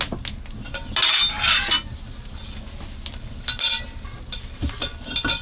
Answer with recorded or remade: recorded